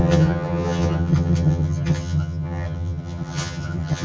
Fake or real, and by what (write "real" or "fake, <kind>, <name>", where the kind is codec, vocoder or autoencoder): fake, vocoder, HiFi-GAN